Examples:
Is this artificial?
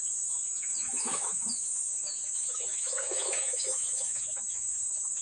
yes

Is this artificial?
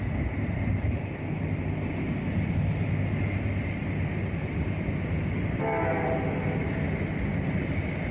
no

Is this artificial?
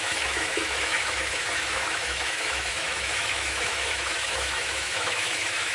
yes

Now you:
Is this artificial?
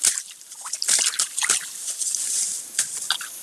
no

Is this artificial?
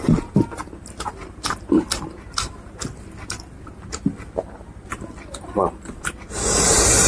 no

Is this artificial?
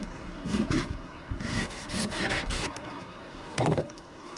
yes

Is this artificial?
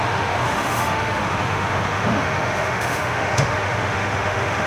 yes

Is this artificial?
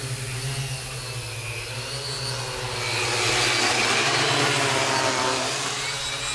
no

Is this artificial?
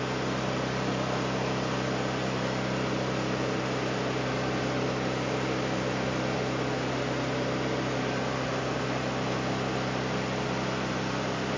no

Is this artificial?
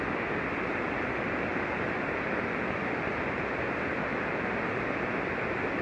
no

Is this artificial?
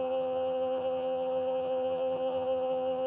yes